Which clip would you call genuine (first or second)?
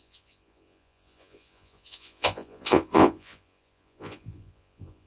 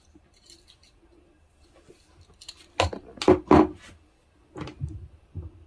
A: second